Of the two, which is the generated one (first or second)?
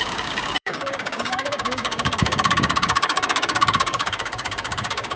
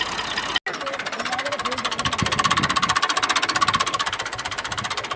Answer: first